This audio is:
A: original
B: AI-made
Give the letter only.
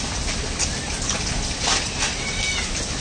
A